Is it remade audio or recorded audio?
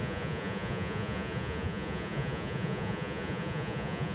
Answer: remade